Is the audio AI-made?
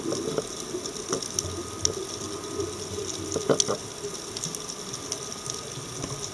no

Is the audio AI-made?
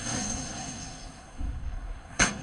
yes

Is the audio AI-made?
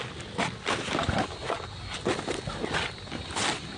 no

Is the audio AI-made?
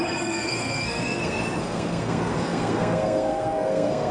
yes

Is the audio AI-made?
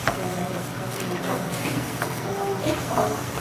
yes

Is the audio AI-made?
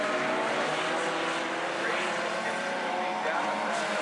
no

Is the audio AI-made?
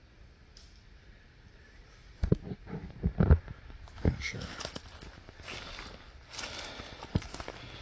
no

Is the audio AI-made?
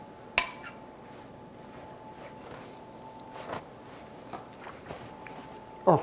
no